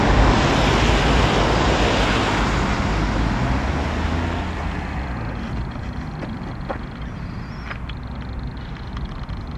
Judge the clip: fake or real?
real